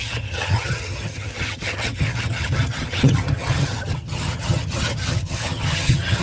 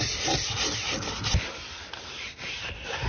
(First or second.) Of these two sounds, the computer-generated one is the first